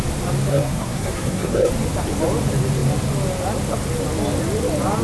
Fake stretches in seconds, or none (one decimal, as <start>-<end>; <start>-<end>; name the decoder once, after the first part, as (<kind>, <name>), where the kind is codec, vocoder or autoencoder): 0.5-1.7 (codec, SNAC)